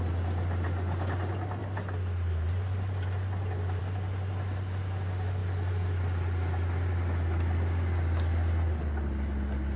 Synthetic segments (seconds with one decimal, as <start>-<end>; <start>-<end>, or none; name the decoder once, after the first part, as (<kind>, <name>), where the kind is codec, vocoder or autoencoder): none